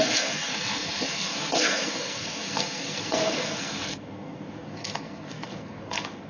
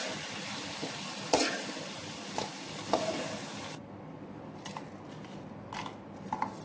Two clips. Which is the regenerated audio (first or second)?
first